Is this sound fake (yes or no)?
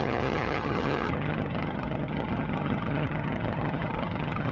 yes